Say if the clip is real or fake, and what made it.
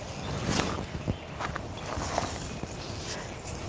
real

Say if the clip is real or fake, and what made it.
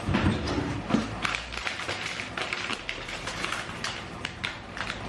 fake, vocoder, BigVGAN v2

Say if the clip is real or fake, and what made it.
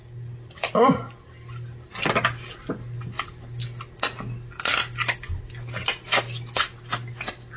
real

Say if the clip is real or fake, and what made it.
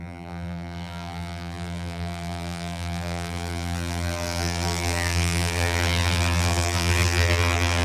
fake, vocoder, BigVGAN v2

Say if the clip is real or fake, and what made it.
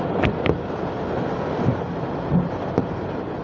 real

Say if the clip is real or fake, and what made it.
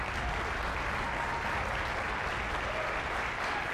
real